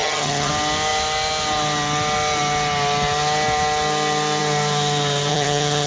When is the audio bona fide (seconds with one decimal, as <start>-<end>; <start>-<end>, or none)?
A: 0.5-5.3